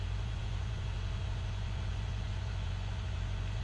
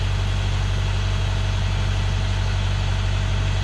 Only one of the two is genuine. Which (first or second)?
second